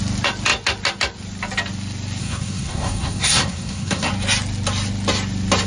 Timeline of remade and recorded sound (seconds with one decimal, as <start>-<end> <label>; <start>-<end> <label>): 0.0-2.2 recorded; 2.2-4.1 remade; 4.1-5.7 recorded